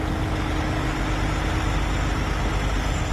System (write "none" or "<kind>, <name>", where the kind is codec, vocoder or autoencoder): none